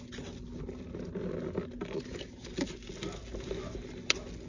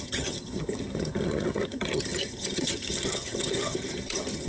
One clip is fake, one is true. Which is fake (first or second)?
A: second